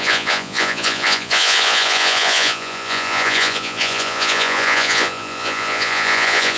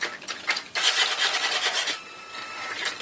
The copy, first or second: first